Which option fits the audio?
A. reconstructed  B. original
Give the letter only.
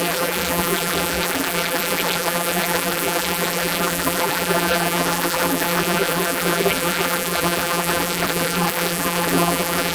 A